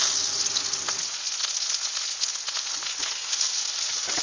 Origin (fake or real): real